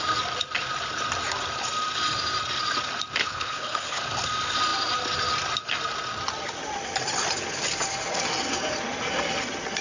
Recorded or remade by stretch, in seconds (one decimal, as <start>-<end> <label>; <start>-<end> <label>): 0.0-3.2 recorded; 3.2-4.0 remade; 4.0-9.8 recorded